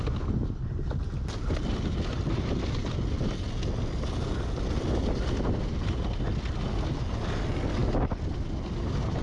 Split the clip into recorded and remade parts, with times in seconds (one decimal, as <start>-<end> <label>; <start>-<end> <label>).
0.0-9.2 recorded